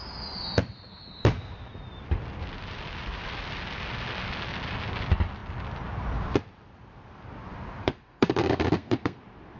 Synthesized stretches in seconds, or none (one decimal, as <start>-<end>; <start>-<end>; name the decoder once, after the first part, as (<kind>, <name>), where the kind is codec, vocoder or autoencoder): 7.8-9.2 (codec, SNAC)